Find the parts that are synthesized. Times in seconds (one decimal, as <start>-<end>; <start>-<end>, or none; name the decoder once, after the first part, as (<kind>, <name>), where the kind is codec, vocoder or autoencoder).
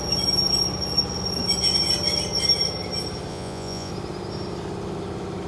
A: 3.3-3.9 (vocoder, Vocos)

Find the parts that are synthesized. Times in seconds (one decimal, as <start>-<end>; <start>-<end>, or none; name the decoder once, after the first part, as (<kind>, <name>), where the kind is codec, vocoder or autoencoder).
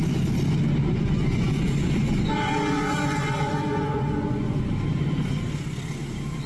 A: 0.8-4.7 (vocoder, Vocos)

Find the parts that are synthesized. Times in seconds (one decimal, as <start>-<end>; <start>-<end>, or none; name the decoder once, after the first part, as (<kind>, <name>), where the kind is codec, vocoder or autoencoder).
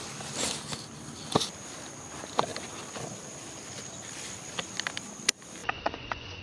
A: 5.6-6.4 (vocoder, Vocos)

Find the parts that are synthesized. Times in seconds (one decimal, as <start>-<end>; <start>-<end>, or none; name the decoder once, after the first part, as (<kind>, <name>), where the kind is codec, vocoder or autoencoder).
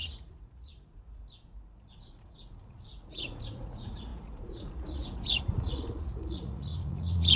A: 0.0-7.4 (vocoder, Vocos)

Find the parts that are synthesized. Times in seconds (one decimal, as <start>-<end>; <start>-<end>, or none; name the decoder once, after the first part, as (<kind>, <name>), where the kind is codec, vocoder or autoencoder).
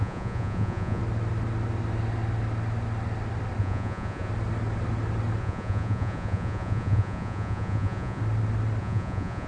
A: 0.0-1.0 (vocoder, Vocos); 3.6-4.3; 5.4-8.2; 8.8-9.5